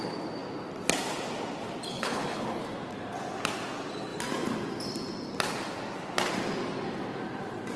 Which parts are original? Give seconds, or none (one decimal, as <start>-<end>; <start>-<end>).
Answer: 0.0-1.9; 2.6-7.8